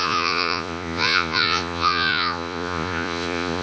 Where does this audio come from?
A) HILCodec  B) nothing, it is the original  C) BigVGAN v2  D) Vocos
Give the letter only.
D